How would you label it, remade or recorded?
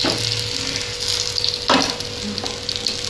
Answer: recorded